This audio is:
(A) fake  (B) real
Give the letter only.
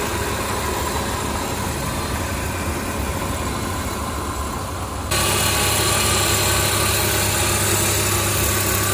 B